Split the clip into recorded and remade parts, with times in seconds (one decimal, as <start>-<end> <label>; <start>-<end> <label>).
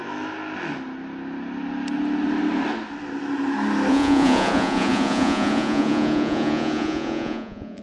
0.0-3.9 recorded; 3.9-7.8 remade